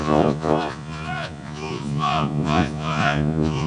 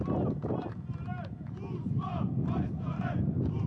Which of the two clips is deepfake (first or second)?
first